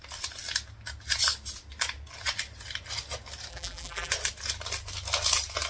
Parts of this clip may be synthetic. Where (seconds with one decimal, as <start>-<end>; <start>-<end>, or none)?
3.5-4.1